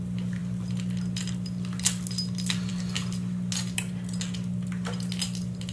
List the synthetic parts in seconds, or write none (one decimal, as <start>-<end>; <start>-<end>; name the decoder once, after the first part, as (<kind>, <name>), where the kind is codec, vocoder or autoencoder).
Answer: none